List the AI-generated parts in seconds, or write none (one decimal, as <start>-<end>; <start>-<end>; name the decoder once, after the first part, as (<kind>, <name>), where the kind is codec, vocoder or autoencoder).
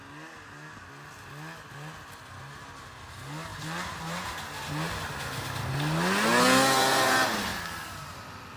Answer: 3.5-4.7 (vocoder, BigVGAN v2)